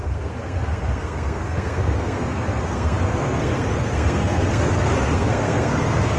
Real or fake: fake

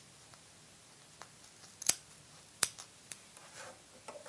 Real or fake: real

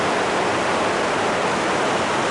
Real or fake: real